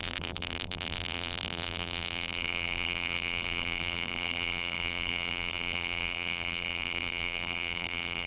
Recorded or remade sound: remade